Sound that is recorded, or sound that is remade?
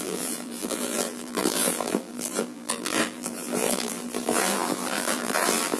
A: remade